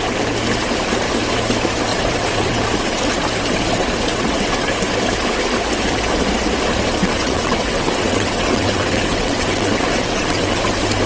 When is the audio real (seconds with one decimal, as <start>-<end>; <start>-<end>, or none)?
0.0-1.9; 2.6-4.1; 4.7-7.0; 10.6-11.1